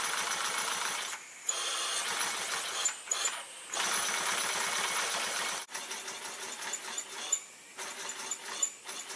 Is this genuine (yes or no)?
yes